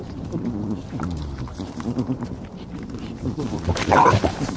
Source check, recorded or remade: remade